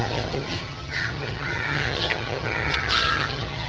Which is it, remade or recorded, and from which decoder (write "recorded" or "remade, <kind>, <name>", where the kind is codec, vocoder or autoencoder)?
remade, vocoder, HiFi-GAN